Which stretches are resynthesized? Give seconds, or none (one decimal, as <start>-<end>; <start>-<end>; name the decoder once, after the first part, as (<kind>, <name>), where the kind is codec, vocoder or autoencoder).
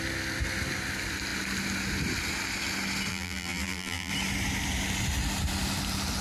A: 3.1-4.1 (vocoder, BigVGAN v2)